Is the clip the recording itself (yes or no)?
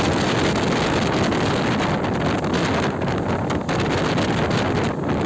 yes